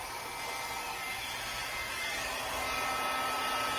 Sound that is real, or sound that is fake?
real